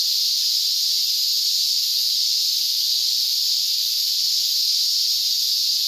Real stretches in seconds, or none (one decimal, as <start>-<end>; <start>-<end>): 0.0-1.6; 4.2-5.9